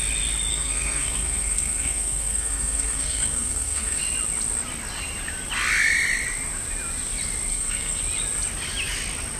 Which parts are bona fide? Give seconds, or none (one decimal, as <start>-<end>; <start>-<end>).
0.0-0.5; 4.0-7.5; 8.0-9.4